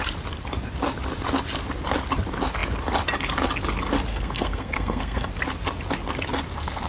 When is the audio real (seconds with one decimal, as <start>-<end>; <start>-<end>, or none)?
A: 0.0-4.1; 5.3-6.9